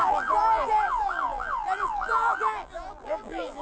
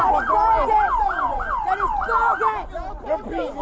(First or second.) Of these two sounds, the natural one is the second